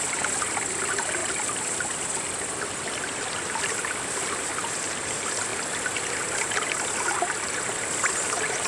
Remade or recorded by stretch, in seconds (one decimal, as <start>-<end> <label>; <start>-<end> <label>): 0.0-1.2 recorded; 1.2-4.5 remade; 4.5-8.7 recorded

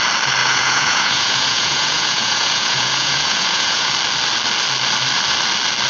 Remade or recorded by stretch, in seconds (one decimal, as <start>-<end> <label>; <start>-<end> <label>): 0.0-0.4 recorded; 0.4-3.9 remade; 3.9-5.9 recorded

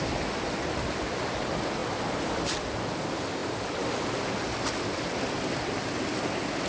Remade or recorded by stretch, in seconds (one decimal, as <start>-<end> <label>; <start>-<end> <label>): 0.0-6.7 recorded